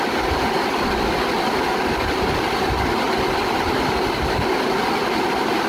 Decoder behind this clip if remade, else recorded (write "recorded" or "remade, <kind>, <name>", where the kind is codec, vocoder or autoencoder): recorded